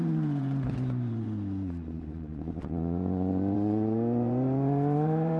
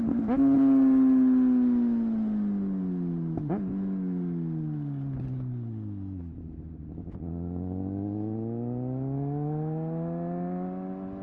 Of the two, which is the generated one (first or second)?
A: first